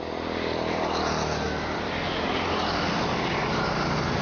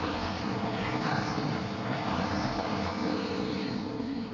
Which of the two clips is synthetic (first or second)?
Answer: second